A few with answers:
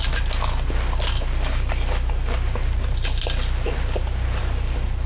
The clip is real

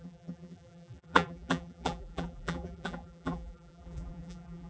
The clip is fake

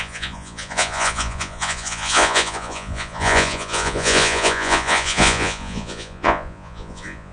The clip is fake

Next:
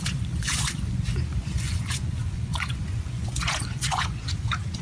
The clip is fake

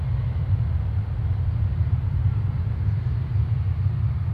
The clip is real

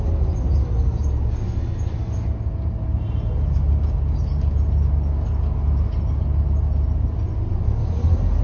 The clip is real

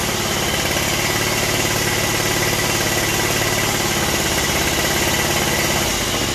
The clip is real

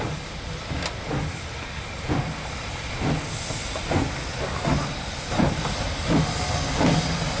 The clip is real